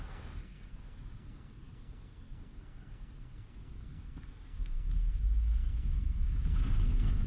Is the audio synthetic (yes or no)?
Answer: yes